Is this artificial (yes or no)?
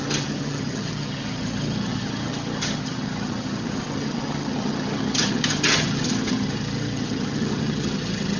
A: yes